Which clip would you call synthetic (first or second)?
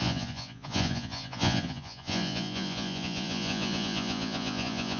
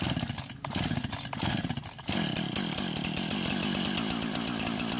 first